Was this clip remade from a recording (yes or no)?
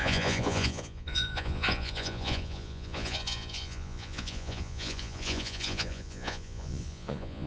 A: yes